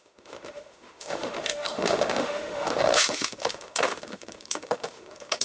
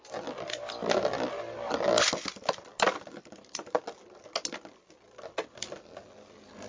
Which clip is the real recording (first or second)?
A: second